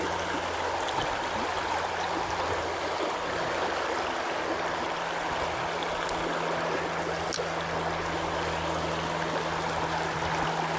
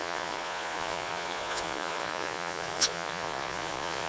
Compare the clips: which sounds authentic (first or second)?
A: first